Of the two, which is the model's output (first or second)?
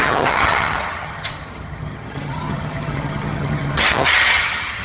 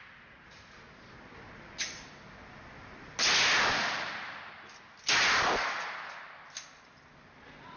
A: first